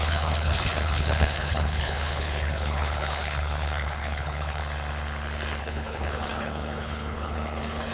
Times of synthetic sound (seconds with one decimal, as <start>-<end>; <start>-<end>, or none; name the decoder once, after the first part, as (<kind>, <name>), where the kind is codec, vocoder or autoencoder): 0.0-4.6 (codec, HILCodec); 5.6-7.9